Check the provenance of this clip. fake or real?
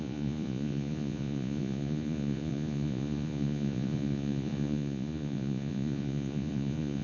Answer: fake